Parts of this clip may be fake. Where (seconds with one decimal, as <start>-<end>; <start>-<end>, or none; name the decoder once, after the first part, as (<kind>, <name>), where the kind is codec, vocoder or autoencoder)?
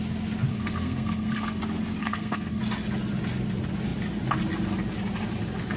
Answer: 0.5-1.6 (codec, SNAC); 2.0-2.6